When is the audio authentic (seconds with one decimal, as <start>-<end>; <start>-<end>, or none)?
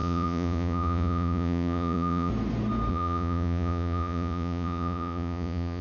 2.3-2.9